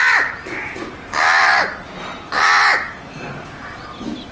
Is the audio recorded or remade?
recorded